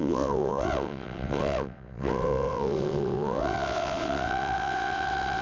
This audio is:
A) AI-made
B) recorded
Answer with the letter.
A